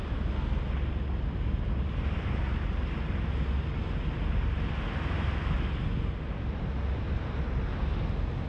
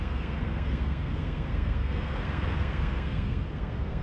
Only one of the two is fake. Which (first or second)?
second